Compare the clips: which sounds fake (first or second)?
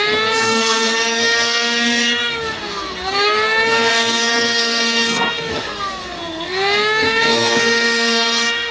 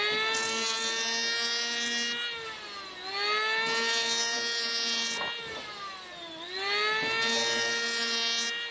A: first